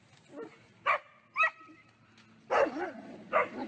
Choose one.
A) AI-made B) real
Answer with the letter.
B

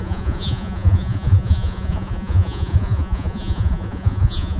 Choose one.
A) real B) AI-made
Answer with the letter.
B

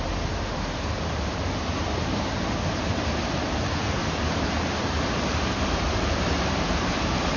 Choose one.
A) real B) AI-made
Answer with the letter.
B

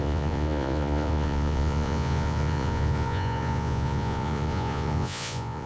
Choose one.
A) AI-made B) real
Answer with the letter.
A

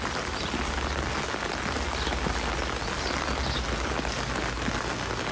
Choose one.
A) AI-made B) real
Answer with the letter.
B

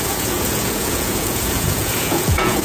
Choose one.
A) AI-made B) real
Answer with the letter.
A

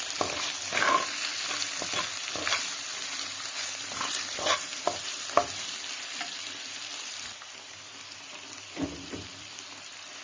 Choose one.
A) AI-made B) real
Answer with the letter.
A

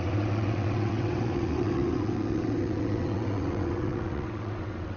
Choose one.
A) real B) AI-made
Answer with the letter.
B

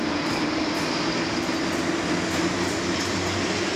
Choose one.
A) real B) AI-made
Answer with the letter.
A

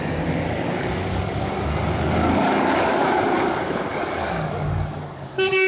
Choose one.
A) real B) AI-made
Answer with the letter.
B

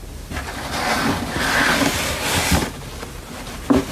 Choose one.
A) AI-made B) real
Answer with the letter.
B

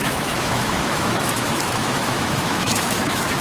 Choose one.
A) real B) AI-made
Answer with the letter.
B